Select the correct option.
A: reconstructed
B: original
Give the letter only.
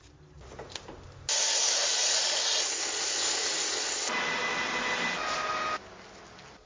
B